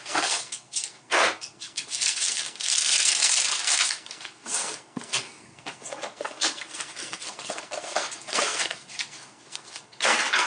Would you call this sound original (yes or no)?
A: no